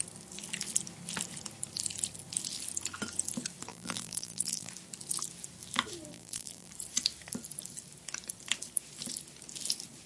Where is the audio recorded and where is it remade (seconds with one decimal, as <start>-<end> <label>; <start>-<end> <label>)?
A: 0.0-3.7 recorded; 3.7-4.7 remade; 4.7-6.1 recorded; 6.1-6.7 remade; 6.7-10.1 recorded